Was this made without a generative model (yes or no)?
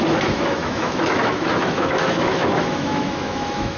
no